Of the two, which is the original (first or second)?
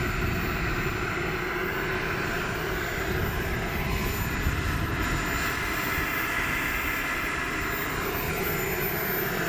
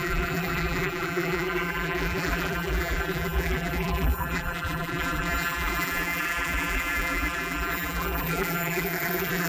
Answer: first